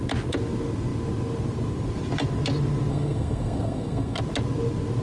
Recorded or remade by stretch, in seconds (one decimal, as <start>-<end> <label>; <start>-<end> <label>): 0.0-2.9 recorded; 2.9-4.2 remade; 4.2-5.0 recorded